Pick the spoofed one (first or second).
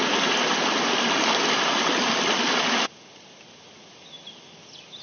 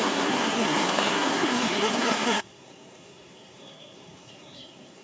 second